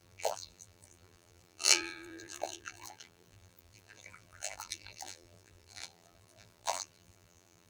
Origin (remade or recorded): remade